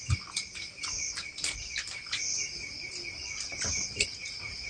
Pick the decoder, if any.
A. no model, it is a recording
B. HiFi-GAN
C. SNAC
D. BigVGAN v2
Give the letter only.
A